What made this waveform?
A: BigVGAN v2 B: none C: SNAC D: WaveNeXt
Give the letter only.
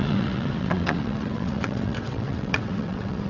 D